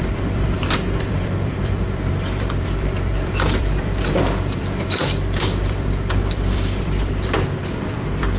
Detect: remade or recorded remade